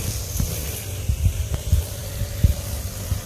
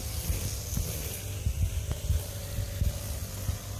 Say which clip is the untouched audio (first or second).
second